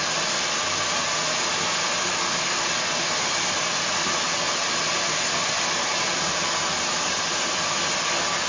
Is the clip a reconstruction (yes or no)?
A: no